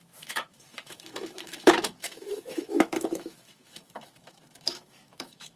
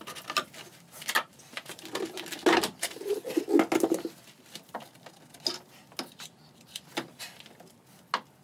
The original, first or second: second